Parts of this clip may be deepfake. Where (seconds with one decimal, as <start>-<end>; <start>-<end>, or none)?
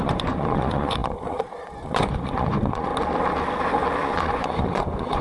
0.0-2.9; 4.0-5.2